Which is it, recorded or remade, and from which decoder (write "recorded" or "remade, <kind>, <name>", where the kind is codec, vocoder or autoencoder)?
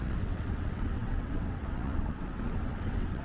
remade, vocoder, WaveNeXt